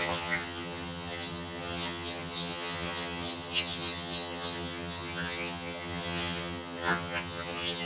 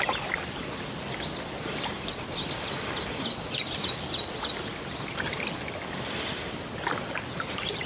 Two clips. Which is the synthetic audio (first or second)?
first